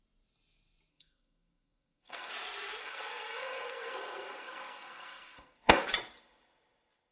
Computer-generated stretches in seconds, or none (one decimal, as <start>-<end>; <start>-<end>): 0.9-2.3; 2.8-5.8